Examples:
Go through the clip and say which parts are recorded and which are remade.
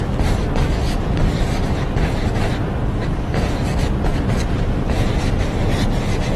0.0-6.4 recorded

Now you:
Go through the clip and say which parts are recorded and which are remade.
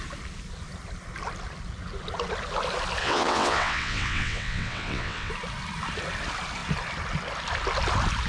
0.0-3.0 recorded; 3.0-5.3 remade; 5.3-8.3 recorded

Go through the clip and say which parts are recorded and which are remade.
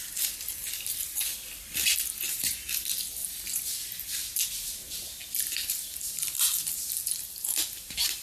0.0-0.6 recorded; 0.6-1.7 remade; 1.7-3.2 recorded; 3.2-5.7 remade; 5.7-8.2 recorded